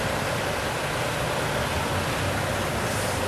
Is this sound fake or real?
real